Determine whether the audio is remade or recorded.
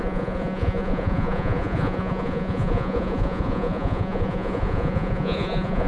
remade